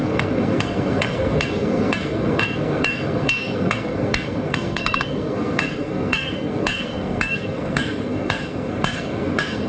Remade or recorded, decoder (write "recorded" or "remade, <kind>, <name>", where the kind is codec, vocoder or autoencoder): remade, codec, SNAC